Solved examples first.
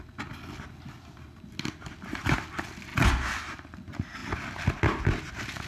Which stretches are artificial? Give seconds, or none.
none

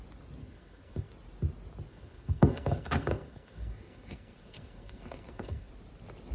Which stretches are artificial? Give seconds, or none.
0.4-1.1; 1.9-5.7